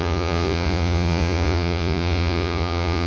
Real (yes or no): no